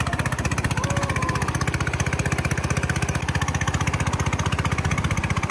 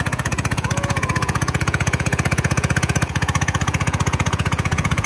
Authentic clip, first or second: first